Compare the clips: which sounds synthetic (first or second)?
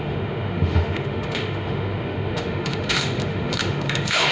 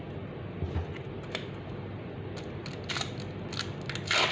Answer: first